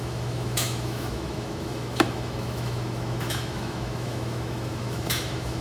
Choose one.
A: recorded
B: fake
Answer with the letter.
B